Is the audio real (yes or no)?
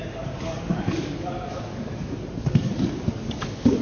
no